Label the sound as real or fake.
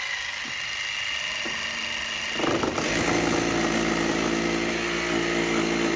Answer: real